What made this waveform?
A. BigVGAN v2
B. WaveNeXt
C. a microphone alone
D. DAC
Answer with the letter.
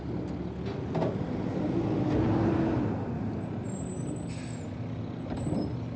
C